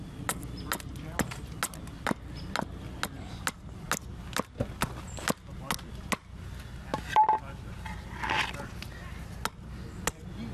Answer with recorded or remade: recorded